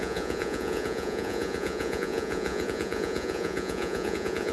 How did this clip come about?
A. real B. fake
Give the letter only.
B